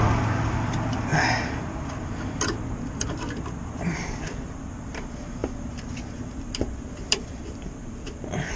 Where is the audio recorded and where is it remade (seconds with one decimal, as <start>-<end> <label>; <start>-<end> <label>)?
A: 0.0-1.1 remade; 1.1-1.9 recorded; 1.9-5.4 remade; 5.4-5.9 recorded; 5.9-8.6 remade